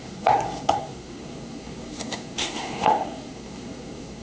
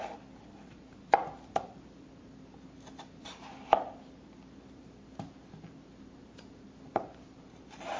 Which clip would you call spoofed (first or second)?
first